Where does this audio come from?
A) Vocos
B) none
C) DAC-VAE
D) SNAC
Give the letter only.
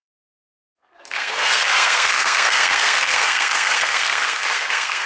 D